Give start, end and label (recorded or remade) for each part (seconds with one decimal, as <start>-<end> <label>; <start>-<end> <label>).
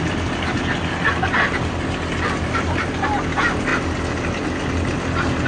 0.0-5.5 recorded